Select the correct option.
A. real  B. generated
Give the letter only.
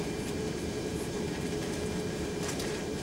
B